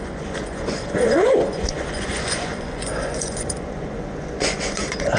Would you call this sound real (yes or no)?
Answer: no